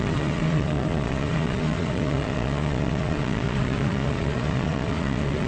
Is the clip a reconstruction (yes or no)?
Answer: yes